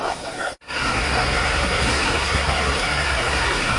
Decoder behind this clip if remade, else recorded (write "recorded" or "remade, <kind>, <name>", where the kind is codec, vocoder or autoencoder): remade, codec, SNAC